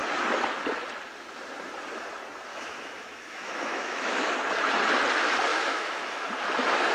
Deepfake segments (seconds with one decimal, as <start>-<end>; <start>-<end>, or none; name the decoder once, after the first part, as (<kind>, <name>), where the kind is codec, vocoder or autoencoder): 2.5-4.3 (autoencoder, DAC-VAE); 5.5-6.3